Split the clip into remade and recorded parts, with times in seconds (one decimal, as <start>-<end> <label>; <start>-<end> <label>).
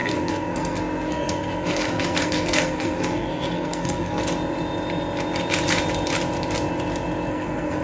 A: 0.0-4.2 remade; 4.2-7.3 recorded; 7.3-7.8 remade